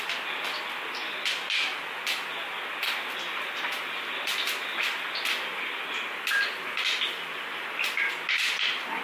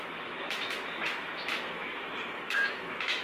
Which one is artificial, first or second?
second